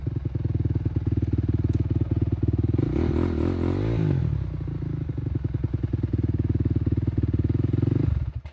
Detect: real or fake real